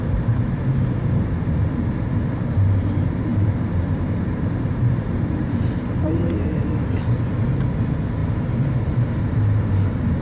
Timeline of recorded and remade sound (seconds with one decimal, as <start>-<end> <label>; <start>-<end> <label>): 0.0-3.3 recorded; 3.3-6.6 remade; 6.6-8.2 recorded; 8.2-9.7 remade; 9.7-10.2 recorded